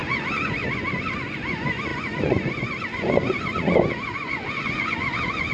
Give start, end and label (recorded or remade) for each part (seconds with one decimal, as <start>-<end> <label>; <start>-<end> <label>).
0.0-5.5 remade